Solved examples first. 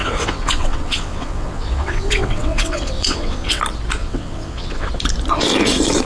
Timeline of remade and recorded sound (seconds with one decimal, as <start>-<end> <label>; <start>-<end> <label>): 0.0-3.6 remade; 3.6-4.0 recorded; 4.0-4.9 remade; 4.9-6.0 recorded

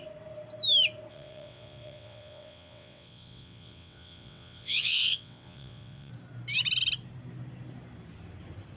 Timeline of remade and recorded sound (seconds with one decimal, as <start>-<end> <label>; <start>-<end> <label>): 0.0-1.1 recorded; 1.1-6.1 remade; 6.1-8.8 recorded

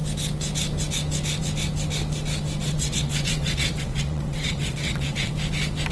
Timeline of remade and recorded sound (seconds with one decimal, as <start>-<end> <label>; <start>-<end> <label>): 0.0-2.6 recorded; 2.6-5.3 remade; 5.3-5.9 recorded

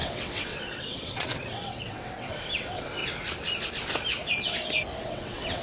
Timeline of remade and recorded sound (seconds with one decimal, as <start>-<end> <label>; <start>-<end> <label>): 0.0-3.0 remade; 3.0-5.0 recorded; 5.0-5.6 remade

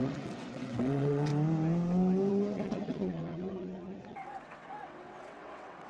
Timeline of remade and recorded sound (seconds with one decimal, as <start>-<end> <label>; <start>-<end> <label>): 0.0-1.3 remade; 1.3-2.3 recorded; 2.3-5.9 remade

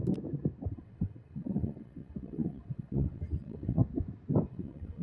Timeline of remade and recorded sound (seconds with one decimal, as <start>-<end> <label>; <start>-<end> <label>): 0.0-0.7 recorded; 0.7-3.8 remade; 3.8-4.5 recorded; 4.5-5.0 remade